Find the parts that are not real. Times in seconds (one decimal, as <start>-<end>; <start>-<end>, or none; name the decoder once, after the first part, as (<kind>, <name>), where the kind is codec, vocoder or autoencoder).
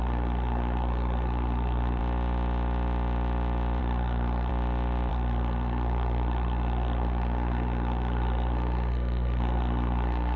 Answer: 0.0-2.0 (codec, SNAC); 3.8-4.5; 5.1-10.4